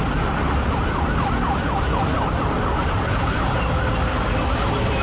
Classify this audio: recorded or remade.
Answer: recorded